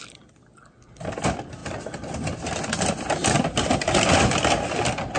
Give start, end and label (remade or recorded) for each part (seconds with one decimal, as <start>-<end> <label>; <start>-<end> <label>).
0.0-5.2 recorded